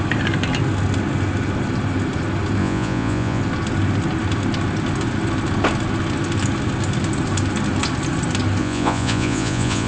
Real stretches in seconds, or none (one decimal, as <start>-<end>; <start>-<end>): 0.0-2.6; 3.4-8.6